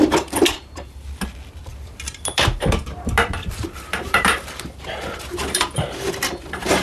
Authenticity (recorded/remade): remade